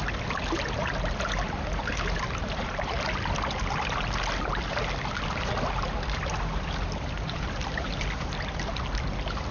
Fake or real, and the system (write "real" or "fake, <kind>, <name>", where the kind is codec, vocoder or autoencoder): real